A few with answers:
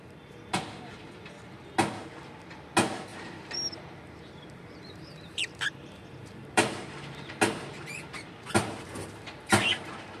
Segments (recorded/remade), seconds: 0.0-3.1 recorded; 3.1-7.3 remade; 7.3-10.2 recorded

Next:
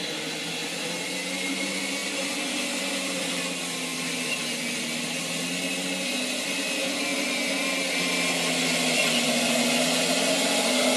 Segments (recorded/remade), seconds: 0.0-11.0 recorded

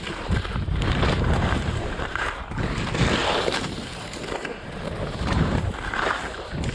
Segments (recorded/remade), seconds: 0.0-0.5 recorded; 0.5-2.3 remade; 2.3-3.2 recorded; 3.2-4.2 remade; 4.2-6.7 recorded

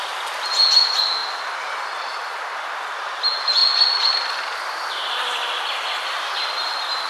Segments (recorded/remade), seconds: 0.0-7.1 recorded